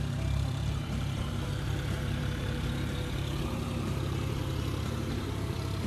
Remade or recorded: remade